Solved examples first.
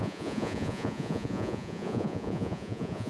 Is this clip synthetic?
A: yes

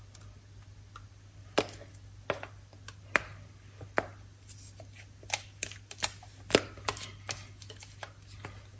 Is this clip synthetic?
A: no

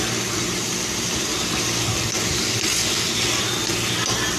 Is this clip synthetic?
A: no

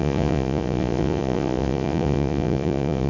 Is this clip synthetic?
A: yes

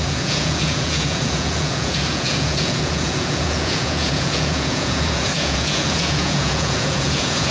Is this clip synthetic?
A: yes